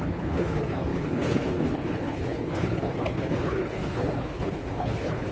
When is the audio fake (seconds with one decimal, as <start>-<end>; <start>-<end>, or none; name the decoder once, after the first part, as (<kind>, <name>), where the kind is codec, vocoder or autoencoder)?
0.0-5.3 (codec, HILCodec)